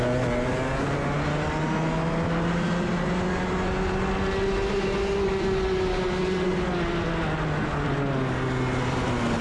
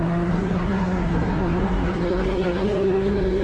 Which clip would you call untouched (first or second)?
first